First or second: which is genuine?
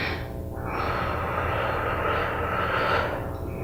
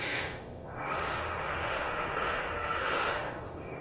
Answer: first